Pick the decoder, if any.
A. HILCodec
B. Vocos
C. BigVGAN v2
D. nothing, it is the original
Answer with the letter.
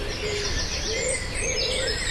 D